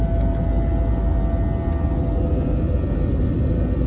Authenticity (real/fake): real